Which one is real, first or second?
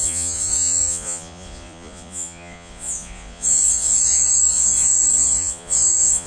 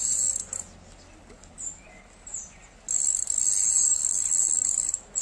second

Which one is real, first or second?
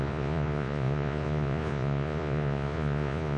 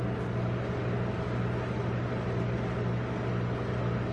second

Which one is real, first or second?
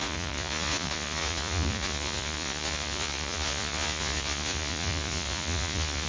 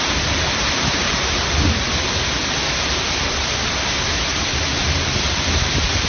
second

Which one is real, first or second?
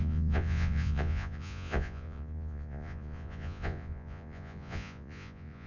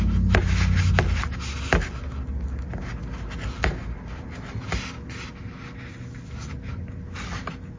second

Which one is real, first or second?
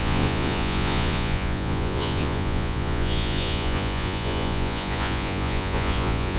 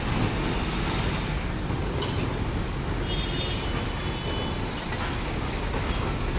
second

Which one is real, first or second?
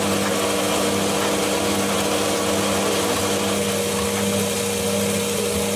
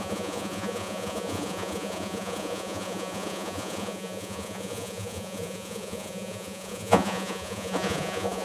first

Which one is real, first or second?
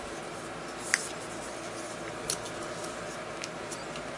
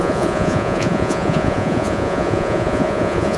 first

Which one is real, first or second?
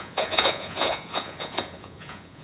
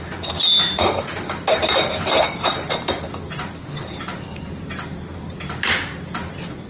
second